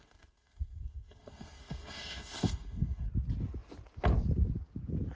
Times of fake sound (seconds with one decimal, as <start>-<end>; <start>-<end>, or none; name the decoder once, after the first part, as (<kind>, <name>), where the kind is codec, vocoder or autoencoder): 0.0-3.1 (codec, SNAC)